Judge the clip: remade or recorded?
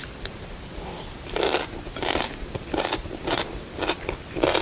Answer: recorded